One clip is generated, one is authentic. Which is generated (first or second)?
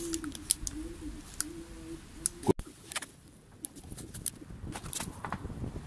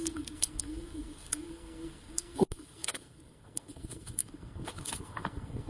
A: second